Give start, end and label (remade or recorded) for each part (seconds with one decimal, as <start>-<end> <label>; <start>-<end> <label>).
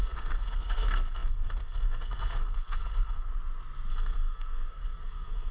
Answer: 0.0-3.3 remade; 3.3-3.9 recorded; 3.9-5.5 remade